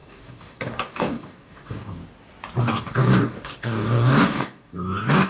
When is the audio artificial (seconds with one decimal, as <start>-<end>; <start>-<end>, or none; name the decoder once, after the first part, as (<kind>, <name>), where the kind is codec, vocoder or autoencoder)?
0.0-2.0 (codec, DAC); 2.6-5.3